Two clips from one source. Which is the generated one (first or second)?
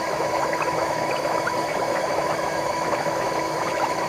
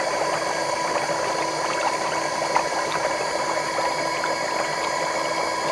first